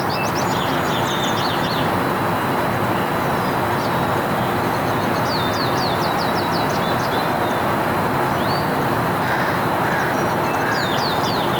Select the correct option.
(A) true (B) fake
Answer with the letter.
A